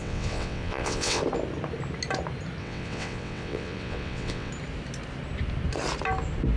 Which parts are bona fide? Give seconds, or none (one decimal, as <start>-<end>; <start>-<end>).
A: 1.2-2.6; 4.5-6.6